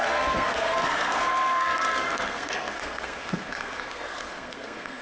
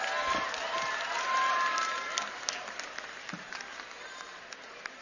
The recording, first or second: second